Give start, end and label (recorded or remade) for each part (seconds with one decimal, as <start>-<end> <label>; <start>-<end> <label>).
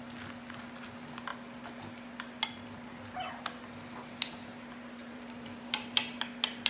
0.0-5.0 recorded; 5.0-5.6 remade; 5.6-6.7 recorded